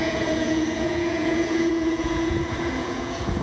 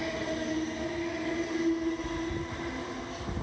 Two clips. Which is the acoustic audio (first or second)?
second